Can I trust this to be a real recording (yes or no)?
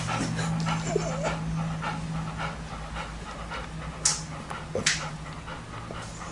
yes